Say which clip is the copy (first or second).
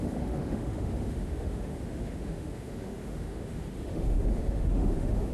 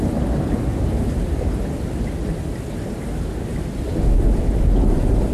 first